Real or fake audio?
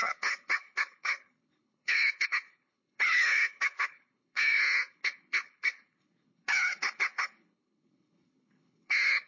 fake